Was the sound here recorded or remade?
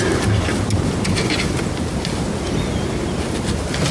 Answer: recorded